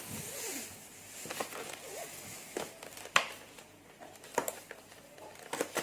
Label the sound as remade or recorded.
recorded